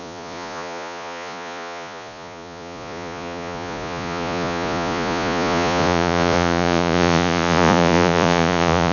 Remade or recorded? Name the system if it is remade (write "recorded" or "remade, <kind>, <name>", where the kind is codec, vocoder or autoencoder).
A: remade, vocoder, Vocos